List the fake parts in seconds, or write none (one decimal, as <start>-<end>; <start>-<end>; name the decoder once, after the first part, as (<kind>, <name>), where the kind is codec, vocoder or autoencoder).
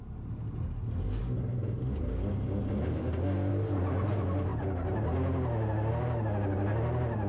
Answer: 3.5-4.1 (vocoder, BigVGAN v2)